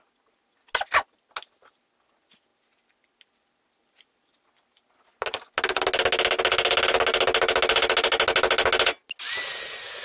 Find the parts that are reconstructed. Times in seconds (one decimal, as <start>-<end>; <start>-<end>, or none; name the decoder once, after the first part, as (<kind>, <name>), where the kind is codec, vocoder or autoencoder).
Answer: none

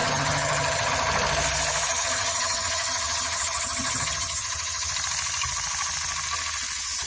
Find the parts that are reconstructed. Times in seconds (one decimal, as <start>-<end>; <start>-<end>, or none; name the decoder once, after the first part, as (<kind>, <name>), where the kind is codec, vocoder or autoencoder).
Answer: 0.0-0.9 (vocoder, HiFi-GAN); 1.9-4.9

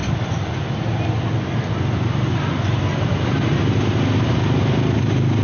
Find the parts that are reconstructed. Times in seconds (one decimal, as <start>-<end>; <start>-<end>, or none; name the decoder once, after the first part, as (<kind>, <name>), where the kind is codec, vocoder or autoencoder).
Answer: none

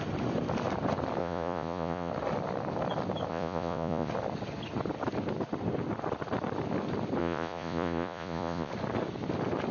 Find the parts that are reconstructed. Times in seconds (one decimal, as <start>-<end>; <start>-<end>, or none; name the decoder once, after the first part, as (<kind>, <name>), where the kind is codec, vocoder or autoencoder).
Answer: 1.2-2.1 (vocoder, Vocos); 3.3-4.1; 7.2-8.7